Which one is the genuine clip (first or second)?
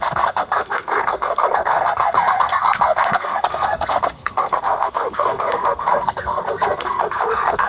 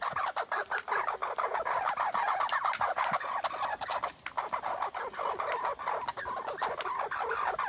second